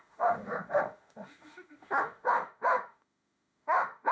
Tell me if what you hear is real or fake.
fake